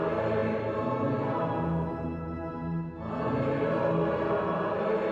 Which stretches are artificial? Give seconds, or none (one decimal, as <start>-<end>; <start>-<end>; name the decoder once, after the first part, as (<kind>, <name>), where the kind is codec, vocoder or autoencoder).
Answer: none